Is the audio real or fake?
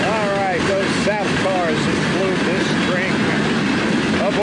real